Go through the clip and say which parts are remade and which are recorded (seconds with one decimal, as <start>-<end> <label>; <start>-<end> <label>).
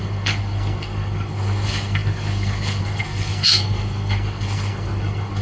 0.0-5.4 remade